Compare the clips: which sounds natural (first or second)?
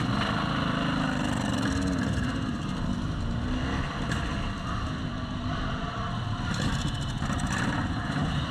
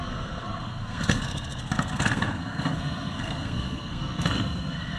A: first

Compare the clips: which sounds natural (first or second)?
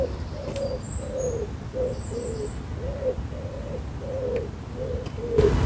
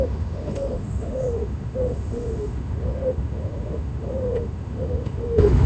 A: first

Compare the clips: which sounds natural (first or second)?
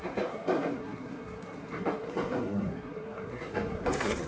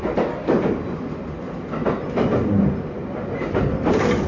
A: second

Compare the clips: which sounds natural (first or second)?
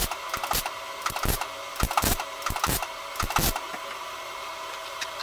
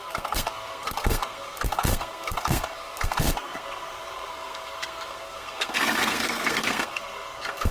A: first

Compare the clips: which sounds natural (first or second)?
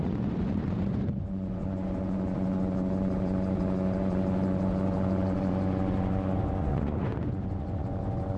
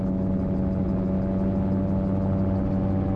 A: second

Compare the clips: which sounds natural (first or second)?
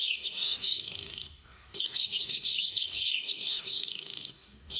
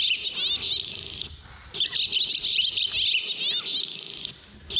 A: second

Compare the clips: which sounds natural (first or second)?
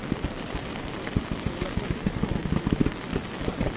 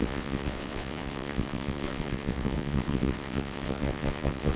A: first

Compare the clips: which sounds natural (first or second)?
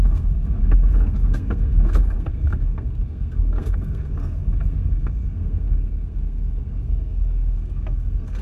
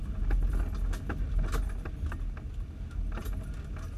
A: second